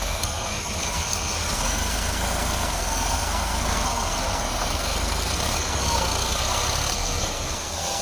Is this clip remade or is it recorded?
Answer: remade